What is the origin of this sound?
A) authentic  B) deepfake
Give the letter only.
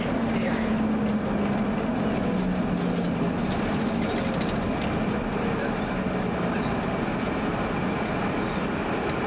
A